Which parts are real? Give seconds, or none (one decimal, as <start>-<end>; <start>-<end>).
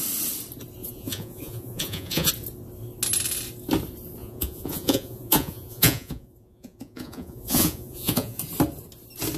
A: 0.0-0.8; 2.3-4.2; 8.4-9.4